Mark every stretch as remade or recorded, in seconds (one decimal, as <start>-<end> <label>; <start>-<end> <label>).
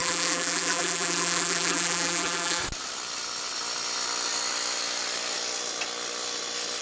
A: 0.0-2.6 remade; 2.6-6.8 recorded